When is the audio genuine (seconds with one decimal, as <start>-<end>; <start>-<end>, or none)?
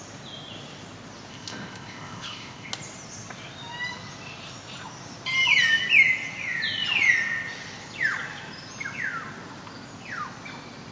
0.0-1.3; 2.7-10.9